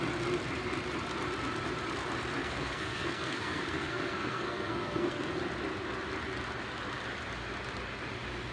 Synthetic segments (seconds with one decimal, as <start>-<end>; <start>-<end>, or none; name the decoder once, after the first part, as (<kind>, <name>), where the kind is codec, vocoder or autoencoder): 2.4-5.4 (codec, SNAC)